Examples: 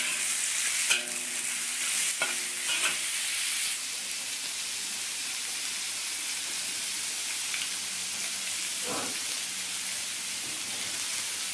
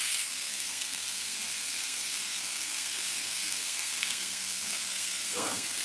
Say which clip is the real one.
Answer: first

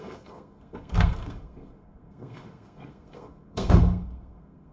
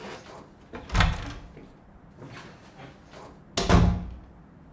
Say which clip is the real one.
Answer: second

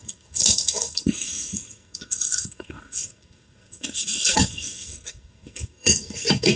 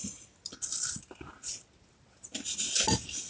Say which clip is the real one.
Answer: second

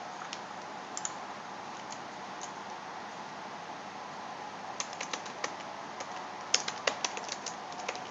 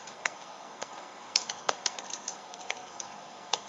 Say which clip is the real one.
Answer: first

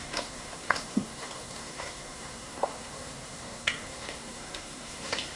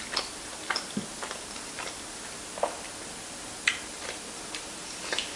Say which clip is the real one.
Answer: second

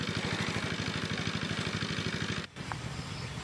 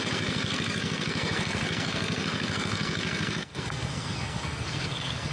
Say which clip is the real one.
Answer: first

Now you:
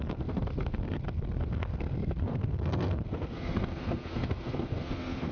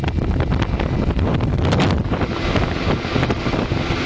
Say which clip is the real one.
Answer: second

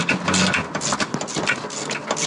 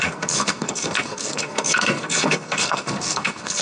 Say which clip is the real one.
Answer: first